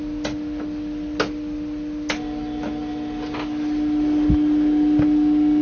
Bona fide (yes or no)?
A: yes